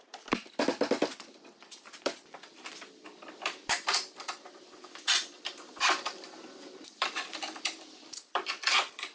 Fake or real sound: fake